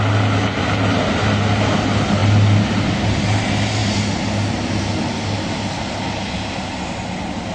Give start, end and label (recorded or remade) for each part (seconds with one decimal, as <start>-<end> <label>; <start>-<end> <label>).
0.0-7.5 recorded